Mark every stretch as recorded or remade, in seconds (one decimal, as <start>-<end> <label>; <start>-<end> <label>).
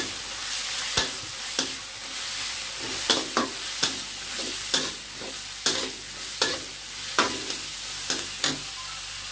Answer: 0.0-9.3 recorded